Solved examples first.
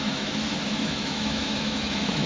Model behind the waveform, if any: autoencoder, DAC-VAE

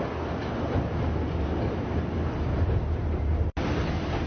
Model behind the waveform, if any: none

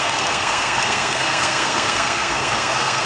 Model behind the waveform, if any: codec, SNAC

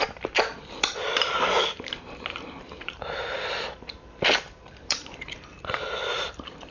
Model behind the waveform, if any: vocoder, BigVGAN v2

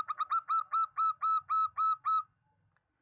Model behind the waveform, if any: none